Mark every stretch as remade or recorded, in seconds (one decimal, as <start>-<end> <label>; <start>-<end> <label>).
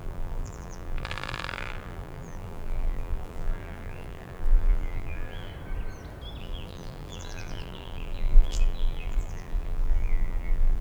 0.0-5.5 remade; 5.5-6.4 recorded; 6.4-10.8 remade